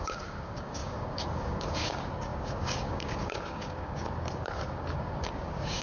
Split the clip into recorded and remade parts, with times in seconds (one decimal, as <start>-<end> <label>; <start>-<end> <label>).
0.0-5.8 remade